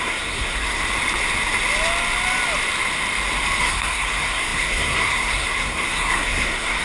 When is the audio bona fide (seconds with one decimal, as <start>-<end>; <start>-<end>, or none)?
0.8-3.6